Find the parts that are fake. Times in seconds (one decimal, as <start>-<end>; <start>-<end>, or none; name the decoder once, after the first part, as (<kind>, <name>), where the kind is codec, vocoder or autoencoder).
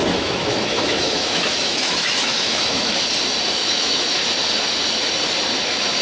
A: 0.0-2.9 (autoencoder, DAC-VAE); 3.6-4.2